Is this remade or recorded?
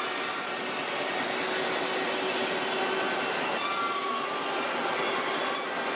recorded